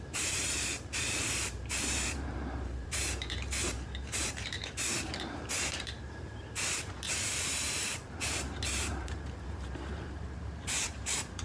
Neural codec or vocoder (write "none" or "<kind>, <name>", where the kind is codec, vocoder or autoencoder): vocoder, BigVGAN v2